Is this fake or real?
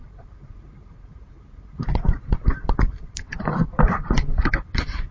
fake